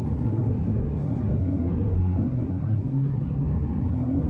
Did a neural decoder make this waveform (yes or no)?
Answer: yes